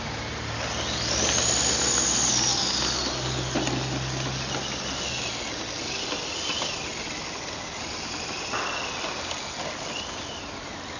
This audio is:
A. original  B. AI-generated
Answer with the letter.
A